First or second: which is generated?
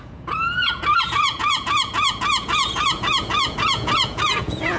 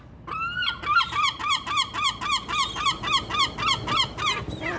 first